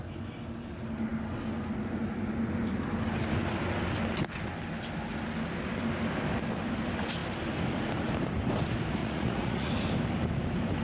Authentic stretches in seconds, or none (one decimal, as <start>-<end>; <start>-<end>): 0.0-9.0; 9.7-10.8